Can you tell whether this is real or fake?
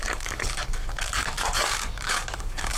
fake